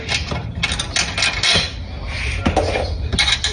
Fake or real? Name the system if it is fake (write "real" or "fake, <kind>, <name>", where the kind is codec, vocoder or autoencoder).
real